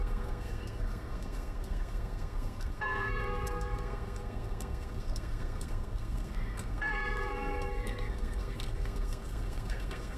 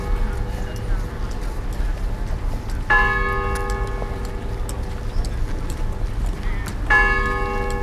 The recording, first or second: second